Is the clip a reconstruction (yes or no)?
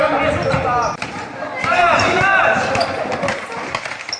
no